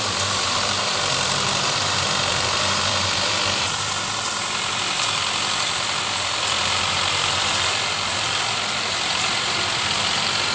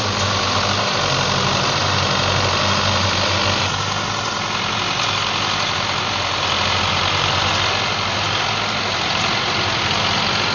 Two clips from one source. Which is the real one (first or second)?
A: second